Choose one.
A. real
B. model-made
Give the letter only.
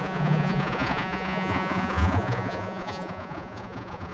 B